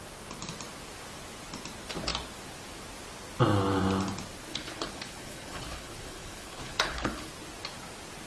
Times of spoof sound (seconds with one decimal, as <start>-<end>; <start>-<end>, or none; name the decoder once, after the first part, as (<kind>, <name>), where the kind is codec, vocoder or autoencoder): 4.5-7.3 (codec, HILCodec)